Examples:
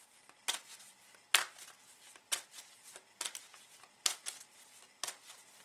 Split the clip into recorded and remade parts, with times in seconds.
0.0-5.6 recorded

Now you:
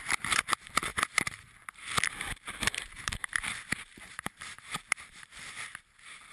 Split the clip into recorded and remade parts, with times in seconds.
0.0-6.3 remade

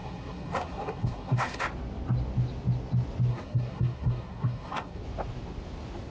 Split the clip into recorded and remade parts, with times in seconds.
0.0-1.6 remade; 1.6-3.3 recorded; 3.3-5.0 remade; 5.0-6.1 recorded

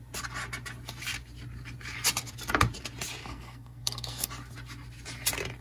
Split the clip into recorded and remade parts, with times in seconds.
0.0-3.2 recorded; 3.2-4.3 remade; 4.3-5.6 recorded